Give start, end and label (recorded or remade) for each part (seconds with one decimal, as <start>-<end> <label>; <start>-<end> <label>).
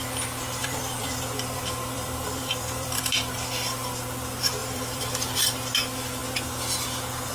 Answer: 0.0-0.6 recorded; 0.6-3.0 remade; 3.0-4.6 recorded; 4.6-5.1 remade; 5.1-7.3 recorded